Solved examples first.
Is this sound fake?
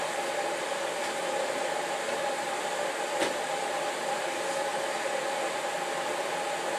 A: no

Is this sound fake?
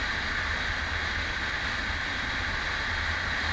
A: no